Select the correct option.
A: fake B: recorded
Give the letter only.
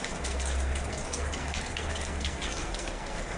A